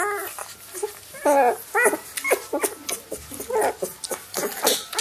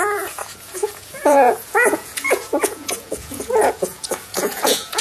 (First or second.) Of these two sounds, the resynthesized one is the second